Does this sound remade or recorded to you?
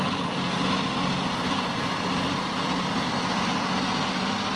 recorded